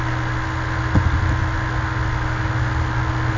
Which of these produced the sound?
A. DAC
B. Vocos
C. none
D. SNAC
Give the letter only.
C